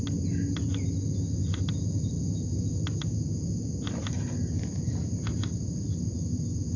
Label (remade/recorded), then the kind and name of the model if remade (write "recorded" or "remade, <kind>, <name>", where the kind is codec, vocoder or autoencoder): recorded